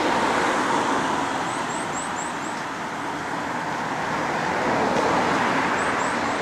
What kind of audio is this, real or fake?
real